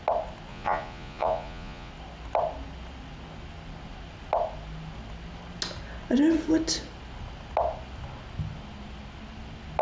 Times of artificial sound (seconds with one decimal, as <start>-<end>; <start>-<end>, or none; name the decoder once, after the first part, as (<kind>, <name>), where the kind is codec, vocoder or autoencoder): 0.5-1.9 (vocoder, Vocos)